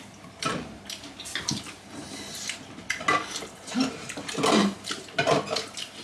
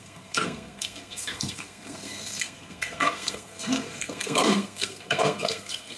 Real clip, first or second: first